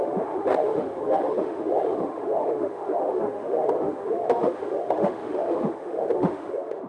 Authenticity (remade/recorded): remade